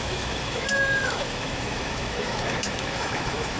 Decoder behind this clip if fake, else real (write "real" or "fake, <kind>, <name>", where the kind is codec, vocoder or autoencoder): fake, autoencoder, DAC-VAE